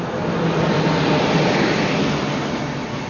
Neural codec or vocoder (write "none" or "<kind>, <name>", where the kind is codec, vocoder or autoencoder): none